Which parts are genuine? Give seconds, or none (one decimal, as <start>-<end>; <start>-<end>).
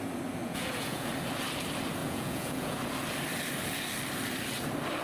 0.0-0.4; 1.1-2.0; 2.8-5.0